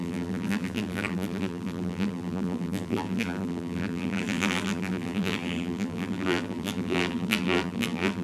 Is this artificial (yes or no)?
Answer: yes